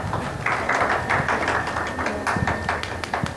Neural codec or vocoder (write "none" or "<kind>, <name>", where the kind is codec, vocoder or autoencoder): none